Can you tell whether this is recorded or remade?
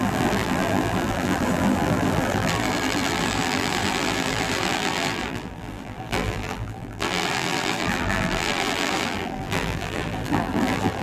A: remade